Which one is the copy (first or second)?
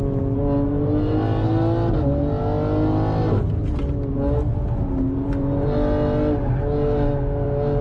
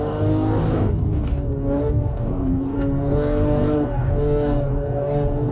second